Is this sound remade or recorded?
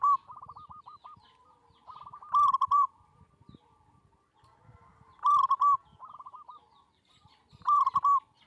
remade